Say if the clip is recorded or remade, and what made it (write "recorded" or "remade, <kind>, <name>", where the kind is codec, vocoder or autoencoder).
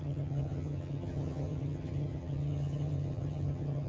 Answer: remade, vocoder, HiFi-GAN